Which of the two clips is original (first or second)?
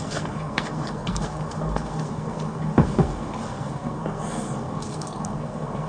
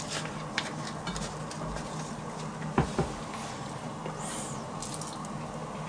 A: second